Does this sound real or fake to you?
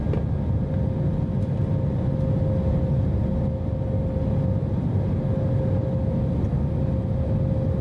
real